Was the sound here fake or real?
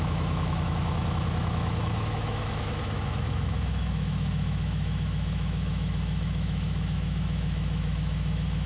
fake